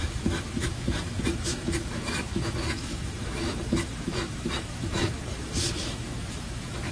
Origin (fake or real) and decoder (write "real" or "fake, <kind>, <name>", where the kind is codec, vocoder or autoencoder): fake, autoencoder, DAC-VAE